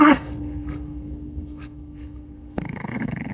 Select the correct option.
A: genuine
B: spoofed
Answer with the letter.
B